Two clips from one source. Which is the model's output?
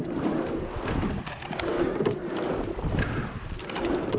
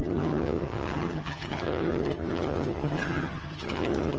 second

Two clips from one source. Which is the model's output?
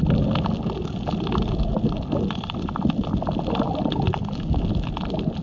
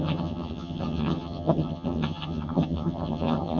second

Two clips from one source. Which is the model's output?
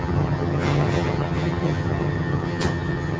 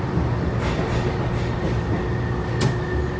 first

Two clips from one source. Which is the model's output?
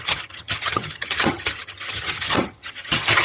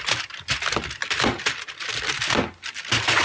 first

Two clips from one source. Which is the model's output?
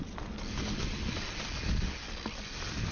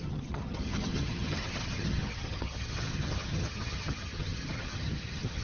second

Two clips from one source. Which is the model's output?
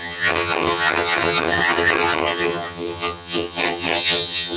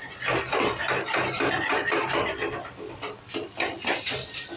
first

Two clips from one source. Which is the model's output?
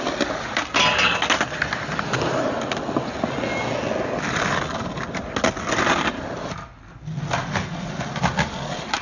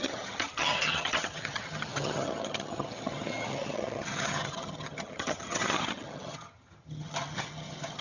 second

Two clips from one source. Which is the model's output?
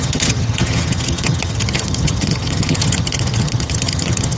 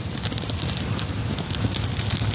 first